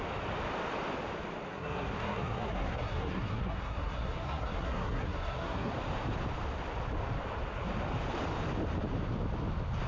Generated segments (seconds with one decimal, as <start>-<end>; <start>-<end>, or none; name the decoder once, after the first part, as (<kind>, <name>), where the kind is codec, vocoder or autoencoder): 1.5-5.7 (codec, SNAC)